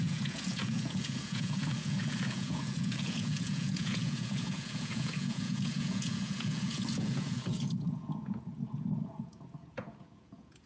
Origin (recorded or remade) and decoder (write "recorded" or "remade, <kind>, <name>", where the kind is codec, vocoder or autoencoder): remade, vocoder, Vocos